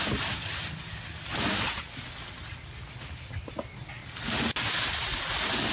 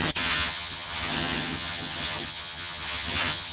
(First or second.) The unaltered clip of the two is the first